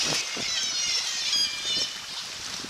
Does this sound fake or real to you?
real